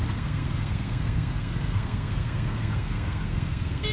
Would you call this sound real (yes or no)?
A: no